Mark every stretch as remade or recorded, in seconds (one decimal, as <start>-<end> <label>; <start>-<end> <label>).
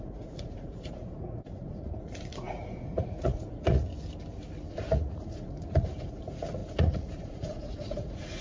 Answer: 0.0-3.9 remade; 3.9-4.7 recorded; 4.7-8.4 remade